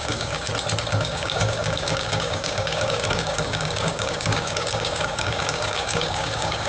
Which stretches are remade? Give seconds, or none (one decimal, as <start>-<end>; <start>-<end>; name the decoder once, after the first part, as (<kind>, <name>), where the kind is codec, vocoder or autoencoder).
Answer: 0.0-0.5 (codec, DAC); 1.0-6.7